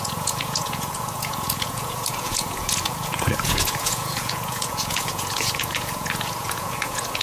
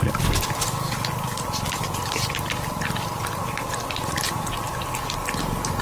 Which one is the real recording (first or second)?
second